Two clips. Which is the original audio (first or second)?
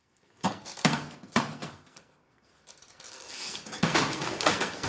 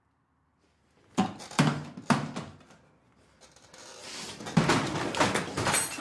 second